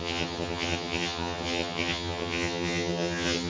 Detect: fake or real fake